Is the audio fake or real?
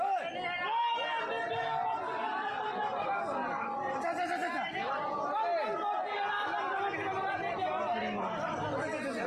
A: real